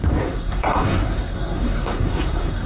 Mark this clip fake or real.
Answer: fake